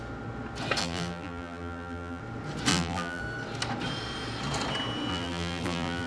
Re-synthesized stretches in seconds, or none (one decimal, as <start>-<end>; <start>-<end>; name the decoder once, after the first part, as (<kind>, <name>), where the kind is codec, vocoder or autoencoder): 0.8-2.2 (vocoder, BigVGAN v2); 2.7-3.2; 5.1-6.1